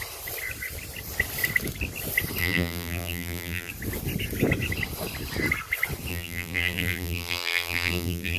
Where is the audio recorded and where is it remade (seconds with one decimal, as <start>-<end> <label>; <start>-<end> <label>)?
0.0-2.4 recorded; 2.4-3.7 remade; 3.7-6.1 recorded; 6.1-8.4 remade